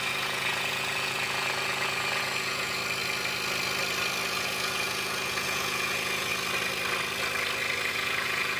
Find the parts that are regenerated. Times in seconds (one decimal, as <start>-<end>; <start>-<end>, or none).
0.0-2.8; 4.3-6.3; 7.9-8.6